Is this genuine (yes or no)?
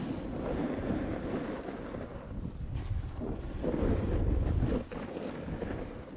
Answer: yes